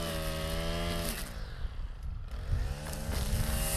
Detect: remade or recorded recorded